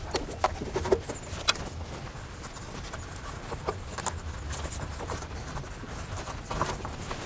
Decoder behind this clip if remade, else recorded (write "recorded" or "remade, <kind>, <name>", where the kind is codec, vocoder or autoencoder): recorded